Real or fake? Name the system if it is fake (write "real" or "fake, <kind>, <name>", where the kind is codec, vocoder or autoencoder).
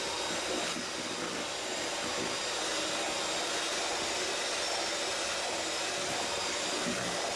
real